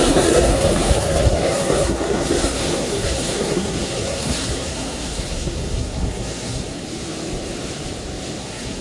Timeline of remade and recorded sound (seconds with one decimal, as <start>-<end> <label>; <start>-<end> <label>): 0.0-6.8 remade; 6.8-8.4 recorded; 8.4-8.8 remade